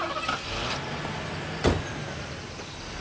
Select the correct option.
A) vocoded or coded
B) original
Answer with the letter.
B